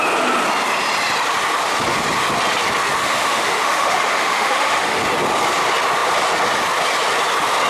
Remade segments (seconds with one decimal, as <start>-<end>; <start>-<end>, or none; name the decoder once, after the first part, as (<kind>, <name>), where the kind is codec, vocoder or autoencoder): 3.0-5.0 (autoencoder, DAC-VAE)